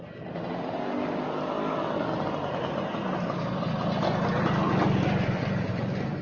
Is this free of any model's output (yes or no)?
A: yes